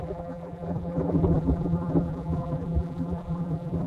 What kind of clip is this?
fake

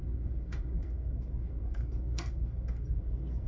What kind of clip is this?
fake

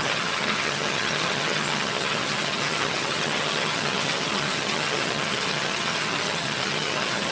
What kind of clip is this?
fake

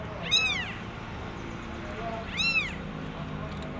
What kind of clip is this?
real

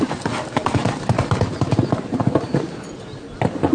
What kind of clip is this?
real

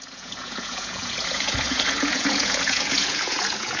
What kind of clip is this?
fake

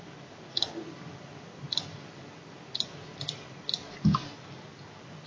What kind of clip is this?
real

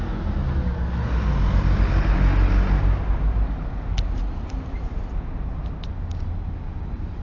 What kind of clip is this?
real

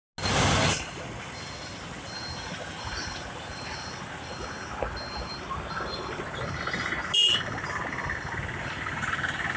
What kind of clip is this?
real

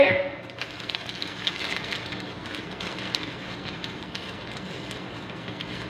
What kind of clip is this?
fake